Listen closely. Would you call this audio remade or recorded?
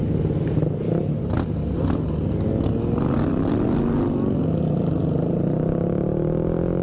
recorded